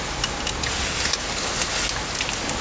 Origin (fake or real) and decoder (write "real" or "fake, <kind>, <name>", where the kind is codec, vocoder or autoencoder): real